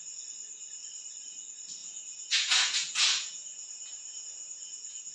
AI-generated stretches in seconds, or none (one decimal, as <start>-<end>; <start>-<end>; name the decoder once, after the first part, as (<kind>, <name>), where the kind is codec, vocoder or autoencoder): 1.8-5.1 (vocoder, Vocos)